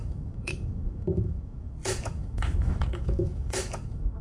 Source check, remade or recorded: remade